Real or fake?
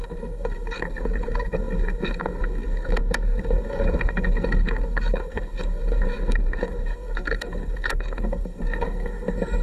fake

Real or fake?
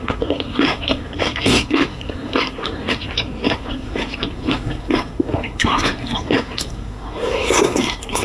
fake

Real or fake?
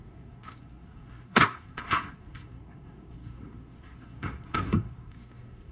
fake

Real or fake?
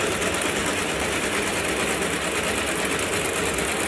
real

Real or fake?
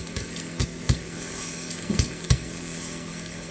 fake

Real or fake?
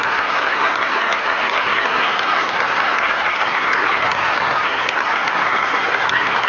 fake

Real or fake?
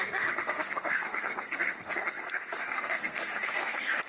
fake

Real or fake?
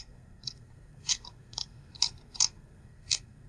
fake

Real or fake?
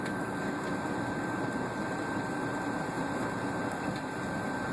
real